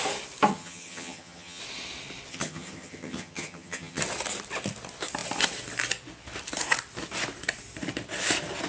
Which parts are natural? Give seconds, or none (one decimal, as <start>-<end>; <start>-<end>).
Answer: 0.0-0.5; 1.6-2.3; 4.0-8.7